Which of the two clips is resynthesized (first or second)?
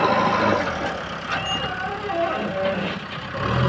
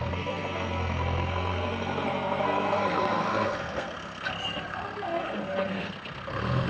second